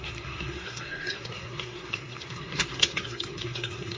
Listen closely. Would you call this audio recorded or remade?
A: remade